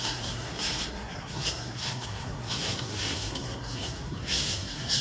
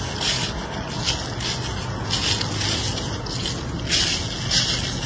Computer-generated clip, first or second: first